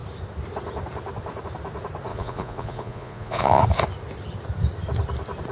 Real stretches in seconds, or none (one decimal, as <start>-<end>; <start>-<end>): 0.0-2.1; 3.6-5.5